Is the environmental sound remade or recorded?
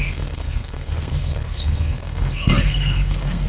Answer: remade